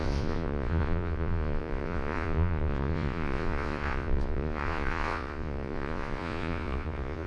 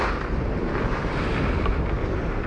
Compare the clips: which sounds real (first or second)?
second